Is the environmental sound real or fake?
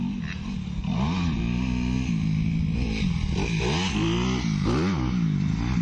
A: real